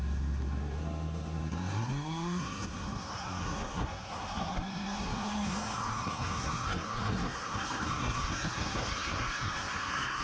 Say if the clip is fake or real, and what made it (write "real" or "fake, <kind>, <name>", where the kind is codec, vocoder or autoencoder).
fake, codec, SNAC